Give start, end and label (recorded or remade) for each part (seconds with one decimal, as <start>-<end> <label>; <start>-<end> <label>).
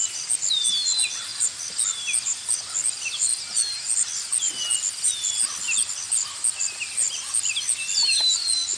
0.0-8.8 recorded